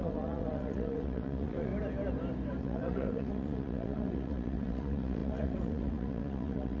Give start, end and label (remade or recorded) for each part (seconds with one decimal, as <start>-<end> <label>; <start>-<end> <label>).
0.0-1.7 remade; 1.7-2.6 recorded; 2.6-6.8 remade